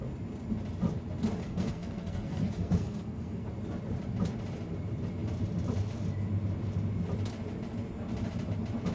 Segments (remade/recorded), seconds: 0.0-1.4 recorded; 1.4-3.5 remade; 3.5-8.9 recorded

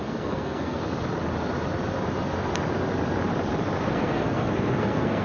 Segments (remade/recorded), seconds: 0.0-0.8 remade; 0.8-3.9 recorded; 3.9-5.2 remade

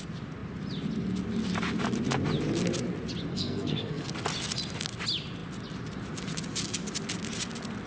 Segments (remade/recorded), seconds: 0.0-3.3 recorded; 3.3-4.1 remade; 4.1-7.9 recorded

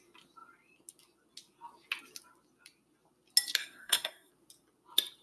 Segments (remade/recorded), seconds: 0.0-3.6 recorded; 3.6-4.3 remade; 4.3-5.2 recorded

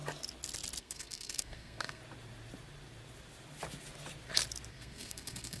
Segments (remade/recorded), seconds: 0.0-0.8 recorded; 0.8-2.0 remade; 2.0-4.7 recorded; 4.7-5.6 remade

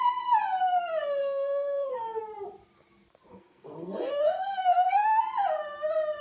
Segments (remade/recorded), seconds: 0.0-1.2 recorded; 1.2-2.2 remade; 2.2-3.3 recorded; 3.3-5.2 remade; 5.2-6.2 recorded